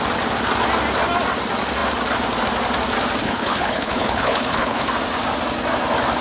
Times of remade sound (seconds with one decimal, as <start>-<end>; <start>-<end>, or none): 3.2-4.8